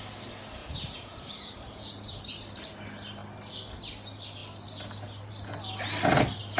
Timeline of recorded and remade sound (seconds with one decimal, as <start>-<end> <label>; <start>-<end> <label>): 0.0-0.6 recorded; 0.6-2.2 remade; 2.2-6.6 recorded